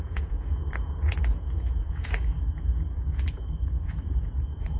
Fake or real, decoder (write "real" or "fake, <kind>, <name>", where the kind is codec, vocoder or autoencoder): fake, vocoder, Vocos